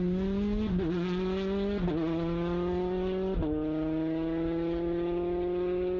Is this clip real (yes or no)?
yes